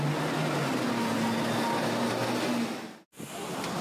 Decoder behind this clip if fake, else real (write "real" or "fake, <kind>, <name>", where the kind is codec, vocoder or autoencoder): real